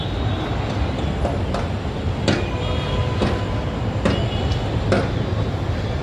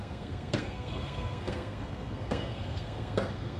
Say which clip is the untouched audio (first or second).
first